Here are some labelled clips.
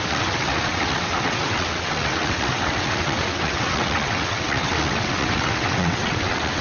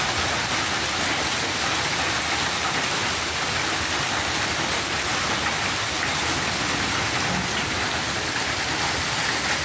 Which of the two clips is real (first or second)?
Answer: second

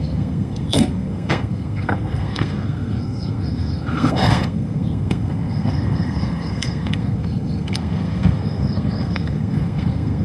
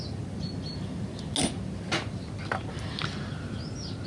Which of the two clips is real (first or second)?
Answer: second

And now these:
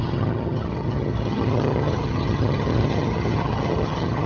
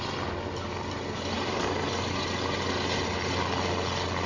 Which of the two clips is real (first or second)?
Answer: second